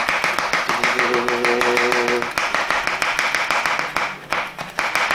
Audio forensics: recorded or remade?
recorded